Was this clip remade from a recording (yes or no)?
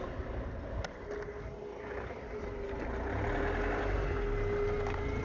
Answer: no